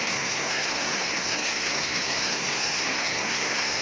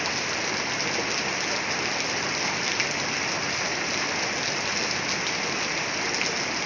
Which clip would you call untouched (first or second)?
second